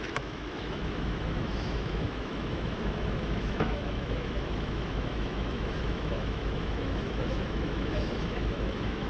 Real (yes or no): no